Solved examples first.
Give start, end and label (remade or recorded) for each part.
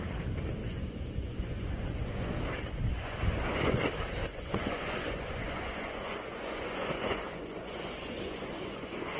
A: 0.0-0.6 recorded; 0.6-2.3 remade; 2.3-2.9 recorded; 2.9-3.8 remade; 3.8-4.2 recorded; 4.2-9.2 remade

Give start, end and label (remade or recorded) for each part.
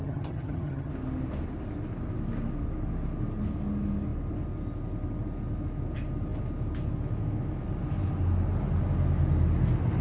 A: 0.0-0.9 remade; 0.9-10.0 recorded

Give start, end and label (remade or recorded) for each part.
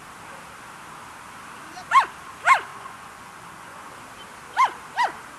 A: 0.0-2.7 recorded; 2.7-3.9 remade; 3.9-5.4 recorded